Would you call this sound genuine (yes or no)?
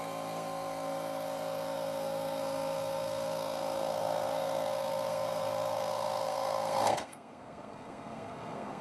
no